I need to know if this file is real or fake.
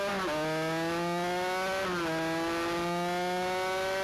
real